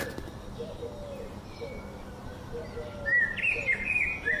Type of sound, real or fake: real